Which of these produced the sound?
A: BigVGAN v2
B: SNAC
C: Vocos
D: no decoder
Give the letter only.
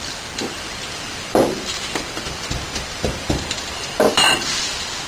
A